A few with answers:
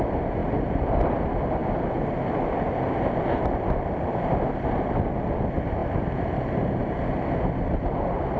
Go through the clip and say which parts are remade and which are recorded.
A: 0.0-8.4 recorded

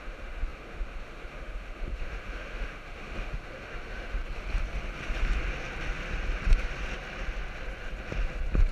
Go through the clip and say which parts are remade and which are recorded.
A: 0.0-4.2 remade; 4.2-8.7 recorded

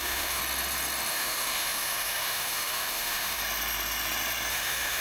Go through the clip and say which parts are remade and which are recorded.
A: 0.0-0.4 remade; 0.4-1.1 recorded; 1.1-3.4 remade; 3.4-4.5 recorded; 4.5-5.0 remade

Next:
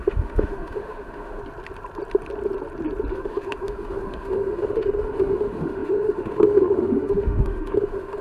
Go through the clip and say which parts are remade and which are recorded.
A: 0.0-1.4 remade; 1.4-3.1 recorded; 3.1-8.2 remade

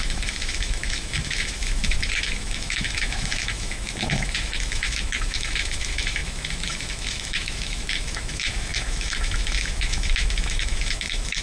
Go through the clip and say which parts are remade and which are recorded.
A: 0.0-11.4 remade

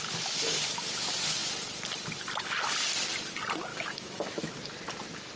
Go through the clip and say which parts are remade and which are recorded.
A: 0.0-3.7 recorded; 3.7-4.5 remade; 4.5-5.4 recorded

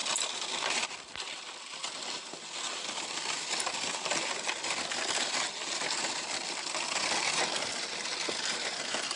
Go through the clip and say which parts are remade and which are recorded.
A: 0.0-9.2 recorded